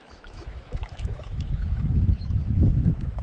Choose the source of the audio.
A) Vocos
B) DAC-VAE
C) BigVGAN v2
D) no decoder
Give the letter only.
B